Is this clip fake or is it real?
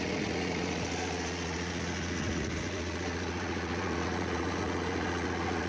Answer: fake